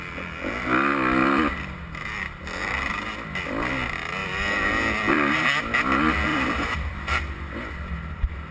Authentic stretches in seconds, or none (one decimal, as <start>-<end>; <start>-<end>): 0.0-1.2; 2.7-4.2; 5.6-6.3; 6.9-8.5